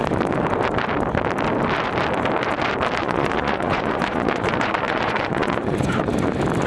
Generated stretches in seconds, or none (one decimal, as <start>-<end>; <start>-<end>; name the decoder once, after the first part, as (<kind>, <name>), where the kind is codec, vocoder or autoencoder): 3.0-6.1 (vocoder, Vocos)